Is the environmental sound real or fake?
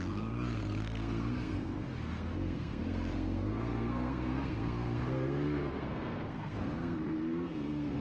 fake